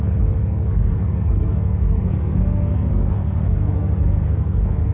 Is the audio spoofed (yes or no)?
yes